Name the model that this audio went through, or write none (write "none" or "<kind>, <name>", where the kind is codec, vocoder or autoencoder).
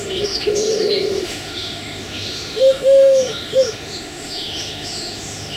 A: autoencoder, DAC-VAE